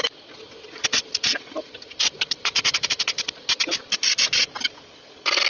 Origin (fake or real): real